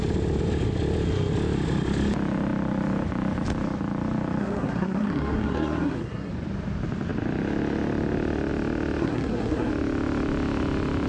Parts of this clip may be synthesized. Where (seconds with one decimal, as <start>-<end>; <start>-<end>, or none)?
4.4-6.3; 9.0-9.7